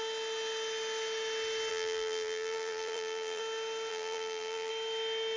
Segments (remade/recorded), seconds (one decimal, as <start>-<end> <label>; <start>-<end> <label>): 0.0-1.7 recorded; 1.7-3.4 remade; 3.4-3.9 recorded; 3.9-4.7 remade; 4.7-5.4 recorded